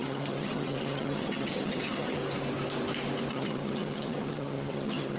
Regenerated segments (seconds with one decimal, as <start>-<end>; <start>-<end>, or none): 0.0-2.2; 3.3-5.2